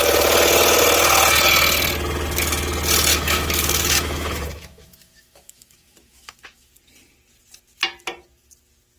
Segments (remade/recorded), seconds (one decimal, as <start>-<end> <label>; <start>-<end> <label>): 0.0-3.1 recorded; 3.1-6.7 remade; 6.7-9.0 recorded